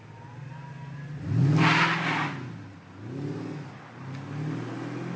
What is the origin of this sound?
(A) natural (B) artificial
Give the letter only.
A